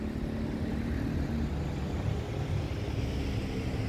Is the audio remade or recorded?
recorded